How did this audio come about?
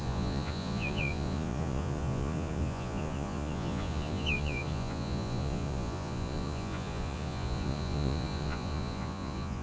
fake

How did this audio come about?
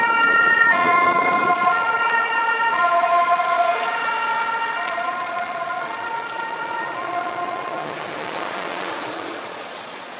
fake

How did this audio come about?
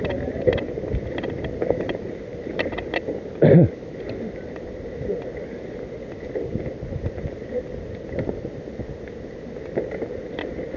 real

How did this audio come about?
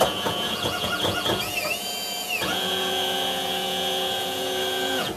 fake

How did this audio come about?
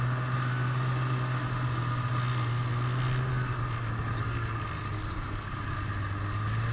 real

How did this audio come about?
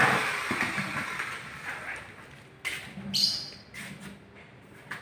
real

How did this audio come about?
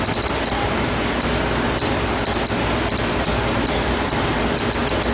real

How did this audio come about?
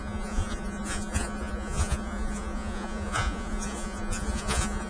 fake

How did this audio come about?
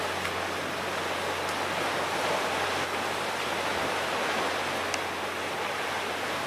real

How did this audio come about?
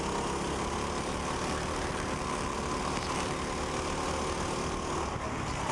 real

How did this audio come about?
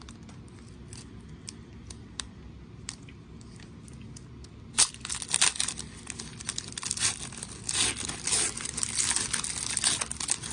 real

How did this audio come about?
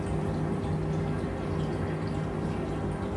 real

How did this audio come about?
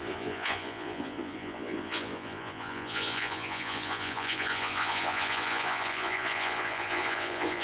fake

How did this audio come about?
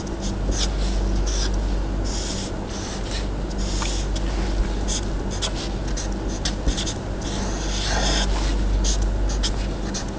real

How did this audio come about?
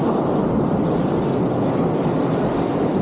real